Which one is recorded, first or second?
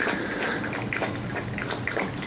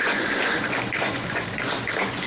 first